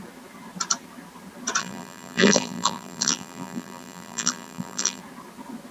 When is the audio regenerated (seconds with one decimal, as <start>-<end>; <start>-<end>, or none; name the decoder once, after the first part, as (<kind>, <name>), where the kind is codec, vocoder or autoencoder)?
1.6-5.0 (vocoder, BigVGAN v2)